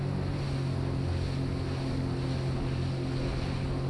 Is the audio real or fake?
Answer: real